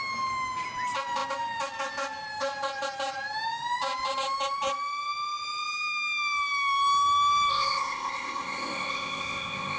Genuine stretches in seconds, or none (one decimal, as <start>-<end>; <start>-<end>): 0.0-7.5